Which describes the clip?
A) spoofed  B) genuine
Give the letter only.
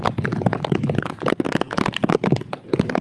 B